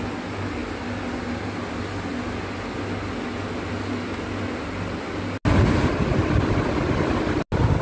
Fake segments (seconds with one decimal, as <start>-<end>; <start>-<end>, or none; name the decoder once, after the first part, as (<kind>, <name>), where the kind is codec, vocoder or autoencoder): none